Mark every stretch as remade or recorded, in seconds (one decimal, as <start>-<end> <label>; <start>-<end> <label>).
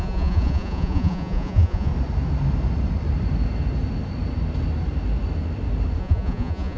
0.0-1.9 remade; 1.9-6.0 recorded; 6.0-6.8 remade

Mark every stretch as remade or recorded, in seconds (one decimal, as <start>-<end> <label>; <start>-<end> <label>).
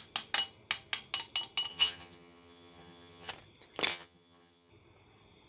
0.0-1.7 recorded; 1.7-3.3 remade; 3.3-3.9 recorded; 3.9-4.7 remade; 4.7-5.5 recorded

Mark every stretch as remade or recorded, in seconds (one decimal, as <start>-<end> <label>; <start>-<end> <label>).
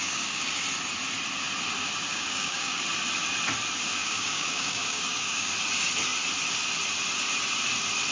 0.0-0.6 remade; 0.6-2.1 recorded; 2.1-2.8 remade; 2.8-4.0 recorded; 4.0-5.5 remade; 5.5-8.1 recorded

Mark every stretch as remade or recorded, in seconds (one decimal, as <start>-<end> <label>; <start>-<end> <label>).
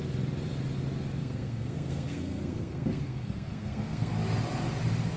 0.0-1.2 recorded; 1.2-4.1 remade; 4.1-5.2 recorded